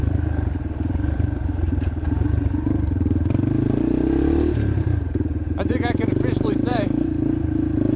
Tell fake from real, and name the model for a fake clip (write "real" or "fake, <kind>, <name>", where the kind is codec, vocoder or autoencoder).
fake, vocoder, BigVGAN v2